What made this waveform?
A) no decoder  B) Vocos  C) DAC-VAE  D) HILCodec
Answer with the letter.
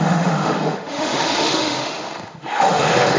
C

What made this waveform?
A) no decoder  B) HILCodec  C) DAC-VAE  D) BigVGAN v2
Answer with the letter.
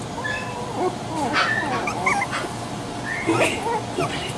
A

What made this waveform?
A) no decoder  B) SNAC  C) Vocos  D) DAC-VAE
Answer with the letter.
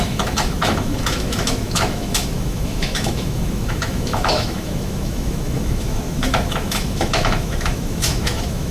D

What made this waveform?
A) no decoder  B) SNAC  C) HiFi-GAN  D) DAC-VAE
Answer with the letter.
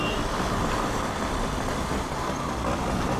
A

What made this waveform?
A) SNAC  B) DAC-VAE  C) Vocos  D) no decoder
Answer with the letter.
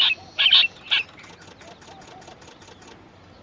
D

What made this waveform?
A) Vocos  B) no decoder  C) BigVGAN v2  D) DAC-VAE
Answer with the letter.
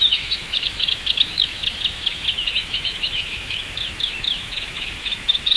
D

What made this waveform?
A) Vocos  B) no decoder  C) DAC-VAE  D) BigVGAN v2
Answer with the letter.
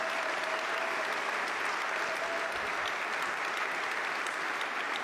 B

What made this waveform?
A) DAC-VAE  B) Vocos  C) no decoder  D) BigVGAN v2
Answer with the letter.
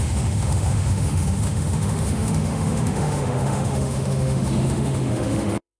A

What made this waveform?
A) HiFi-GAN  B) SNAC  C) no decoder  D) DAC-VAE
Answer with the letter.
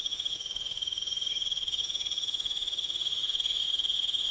D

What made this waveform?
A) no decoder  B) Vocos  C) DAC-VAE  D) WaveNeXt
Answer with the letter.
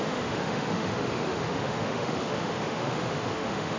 C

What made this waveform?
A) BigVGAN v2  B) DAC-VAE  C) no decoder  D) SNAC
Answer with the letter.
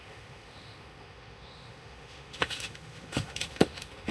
B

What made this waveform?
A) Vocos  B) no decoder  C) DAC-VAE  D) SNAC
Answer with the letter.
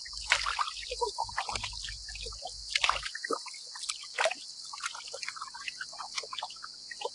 B